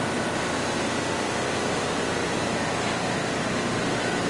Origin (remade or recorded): recorded